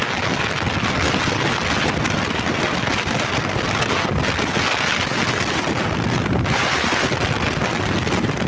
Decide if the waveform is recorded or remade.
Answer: recorded